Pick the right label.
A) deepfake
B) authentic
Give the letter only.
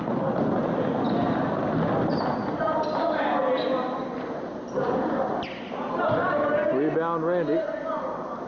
B